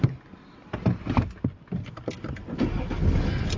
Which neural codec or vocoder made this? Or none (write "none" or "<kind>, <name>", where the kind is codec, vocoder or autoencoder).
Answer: none